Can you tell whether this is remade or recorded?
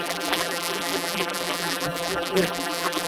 remade